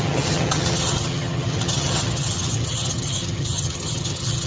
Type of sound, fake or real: fake